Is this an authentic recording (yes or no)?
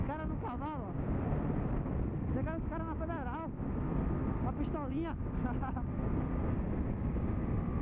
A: yes